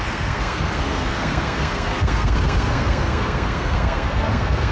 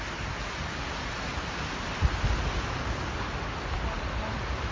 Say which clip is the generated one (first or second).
first